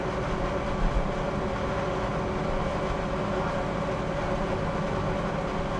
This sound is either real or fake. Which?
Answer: real